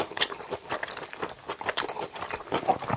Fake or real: real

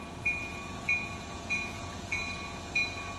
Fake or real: fake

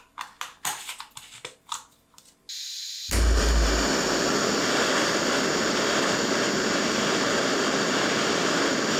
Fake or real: real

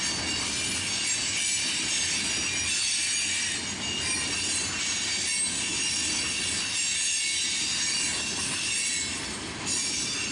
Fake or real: real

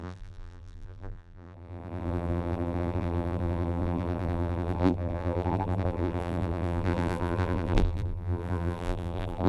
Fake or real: fake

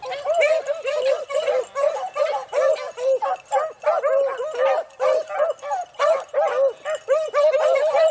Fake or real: real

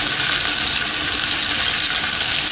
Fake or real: real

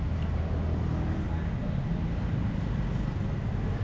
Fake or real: real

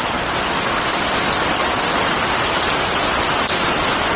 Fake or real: real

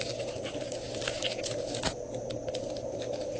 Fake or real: real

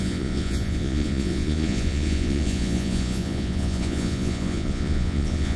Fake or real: fake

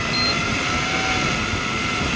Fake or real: real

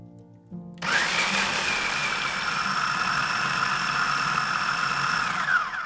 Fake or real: real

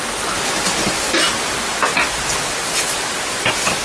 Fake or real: real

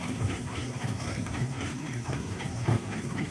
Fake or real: fake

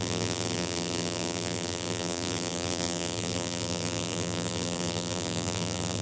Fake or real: fake